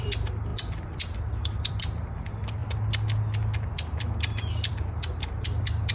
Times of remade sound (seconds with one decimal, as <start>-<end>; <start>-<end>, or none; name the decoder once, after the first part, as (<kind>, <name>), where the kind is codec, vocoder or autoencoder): 0.0-2.6 (vocoder, BigVGAN v2); 4.7-5.9